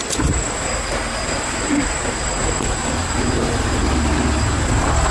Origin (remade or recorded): recorded